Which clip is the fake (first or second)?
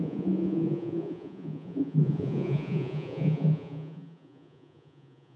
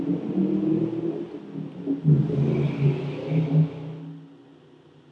first